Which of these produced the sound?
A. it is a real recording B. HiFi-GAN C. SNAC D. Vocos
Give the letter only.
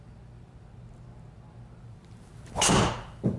A